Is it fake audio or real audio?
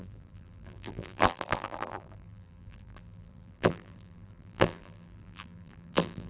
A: fake